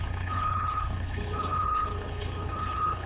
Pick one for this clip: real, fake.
fake